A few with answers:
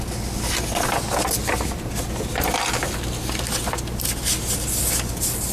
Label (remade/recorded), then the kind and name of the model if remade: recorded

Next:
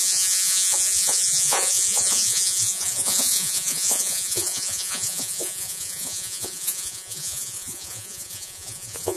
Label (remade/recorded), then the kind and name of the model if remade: remade, vocoder, Vocos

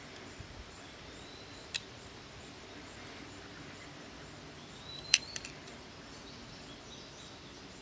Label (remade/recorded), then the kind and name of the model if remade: remade, vocoder, BigVGAN v2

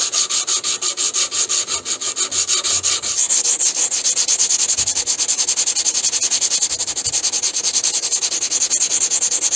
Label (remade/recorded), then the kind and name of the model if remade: recorded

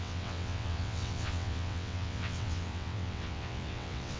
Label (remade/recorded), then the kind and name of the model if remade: remade, vocoder, WaveNeXt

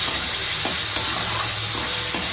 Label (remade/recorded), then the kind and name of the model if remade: recorded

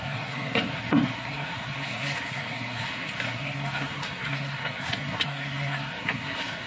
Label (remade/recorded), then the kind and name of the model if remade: remade, codec, SNAC